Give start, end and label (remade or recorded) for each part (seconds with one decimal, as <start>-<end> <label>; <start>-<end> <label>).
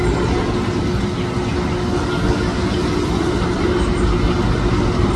0.0-5.2 recorded